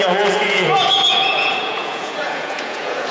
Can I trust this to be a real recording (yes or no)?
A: no